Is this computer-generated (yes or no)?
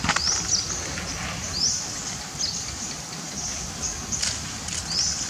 no